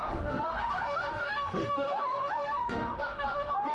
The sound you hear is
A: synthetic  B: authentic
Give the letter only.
A